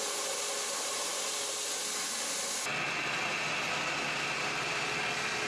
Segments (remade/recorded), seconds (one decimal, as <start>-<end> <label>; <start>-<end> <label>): 0.0-5.5 recorded